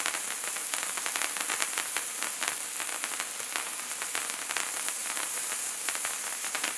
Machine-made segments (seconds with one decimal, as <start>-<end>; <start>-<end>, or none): 5.0-6.8